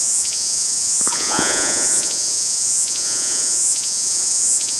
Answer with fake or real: fake